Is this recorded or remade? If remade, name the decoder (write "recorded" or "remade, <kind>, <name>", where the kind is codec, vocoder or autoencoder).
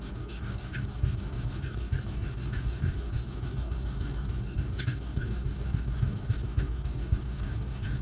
remade, codec, DAC